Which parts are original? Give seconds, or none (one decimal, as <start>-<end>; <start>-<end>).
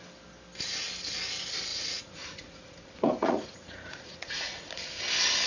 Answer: 0.0-1.7; 5.0-5.5